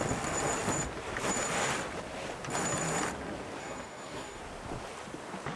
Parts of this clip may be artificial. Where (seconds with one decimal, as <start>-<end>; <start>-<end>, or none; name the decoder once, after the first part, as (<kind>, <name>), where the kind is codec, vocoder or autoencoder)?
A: 3.6-4.4 (codec, SNAC)